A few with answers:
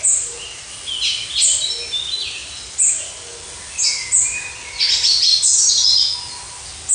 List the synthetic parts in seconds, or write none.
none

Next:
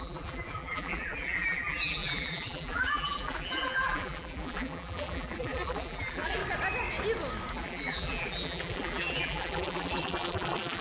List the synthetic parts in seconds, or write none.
0.0-6.4; 7.5-10.8